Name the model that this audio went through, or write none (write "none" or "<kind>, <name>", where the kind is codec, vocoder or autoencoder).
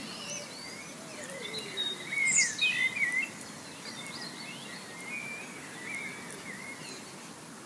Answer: none